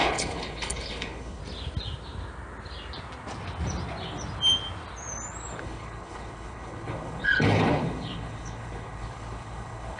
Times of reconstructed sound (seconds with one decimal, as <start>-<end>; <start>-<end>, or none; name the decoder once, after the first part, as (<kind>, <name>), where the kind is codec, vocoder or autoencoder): 0.0-1.4 (codec, HILCodec); 5.6-10.0